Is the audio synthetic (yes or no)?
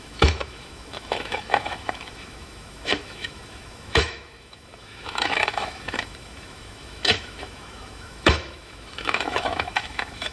yes